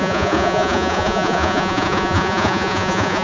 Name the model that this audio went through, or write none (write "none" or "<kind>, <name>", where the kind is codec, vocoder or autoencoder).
vocoder, Vocos